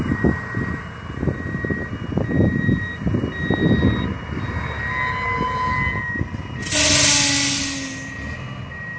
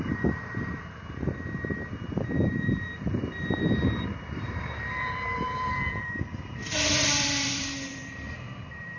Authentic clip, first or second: first